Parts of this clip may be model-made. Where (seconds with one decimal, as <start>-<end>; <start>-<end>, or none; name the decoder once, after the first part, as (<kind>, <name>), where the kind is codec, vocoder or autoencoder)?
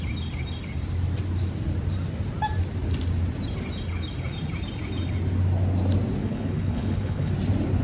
6.2-7.3 (codec, HILCodec)